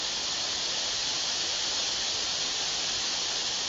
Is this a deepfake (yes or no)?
no